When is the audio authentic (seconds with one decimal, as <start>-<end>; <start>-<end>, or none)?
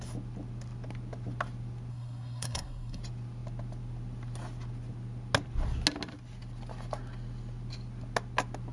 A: 0.0-1.9; 3.0-8.7